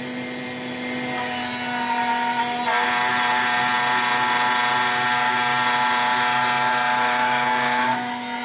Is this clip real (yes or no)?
yes